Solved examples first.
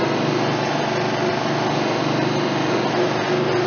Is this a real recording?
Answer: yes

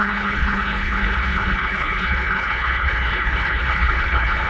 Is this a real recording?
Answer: no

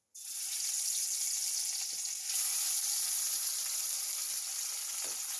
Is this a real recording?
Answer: yes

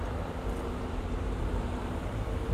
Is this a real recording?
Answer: no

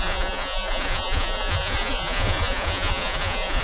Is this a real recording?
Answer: no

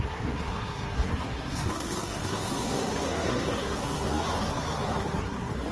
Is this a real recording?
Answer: no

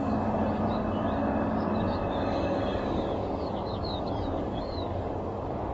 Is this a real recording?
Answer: no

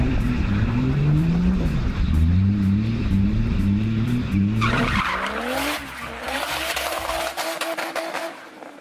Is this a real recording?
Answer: no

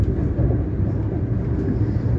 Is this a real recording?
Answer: yes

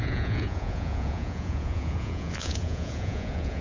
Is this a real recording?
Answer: no